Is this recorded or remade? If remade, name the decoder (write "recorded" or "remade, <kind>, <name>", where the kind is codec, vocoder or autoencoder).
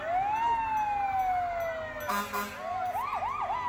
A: recorded